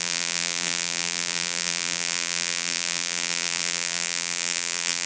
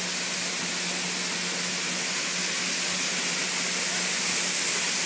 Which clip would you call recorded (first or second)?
second